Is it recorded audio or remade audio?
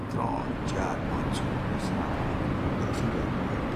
recorded